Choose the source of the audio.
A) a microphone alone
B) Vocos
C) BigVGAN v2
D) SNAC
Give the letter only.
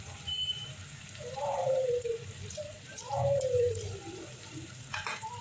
C